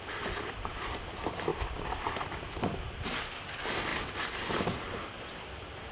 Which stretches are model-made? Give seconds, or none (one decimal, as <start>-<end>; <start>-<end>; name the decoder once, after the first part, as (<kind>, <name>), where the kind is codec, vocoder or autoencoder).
0.0-5.9 (vocoder, BigVGAN v2)